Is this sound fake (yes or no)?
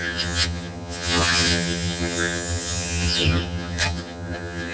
yes